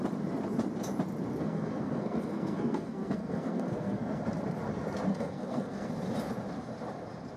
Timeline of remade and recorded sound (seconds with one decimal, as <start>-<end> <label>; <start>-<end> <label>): 0.0-1.3 recorded; 1.3-4.2 remade; 4.2-5.1 recorded; 5.1-5.9 remade; 5.9-7.4 recorded